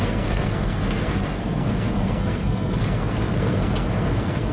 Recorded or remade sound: remade